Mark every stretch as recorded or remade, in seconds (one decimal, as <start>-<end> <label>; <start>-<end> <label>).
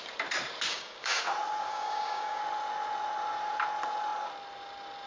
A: 0.0-0.7 recorded; 0.7-1.2 remade; 1.2-1.7 recorded; 1.7-2.4 remade; 2.4-5.1 recorded